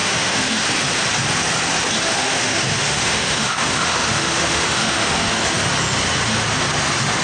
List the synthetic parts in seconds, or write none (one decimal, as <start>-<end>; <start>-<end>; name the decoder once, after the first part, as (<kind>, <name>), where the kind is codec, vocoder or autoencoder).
0.0-0.6 (autoencoder, DAC-VAE); 2.1-5.3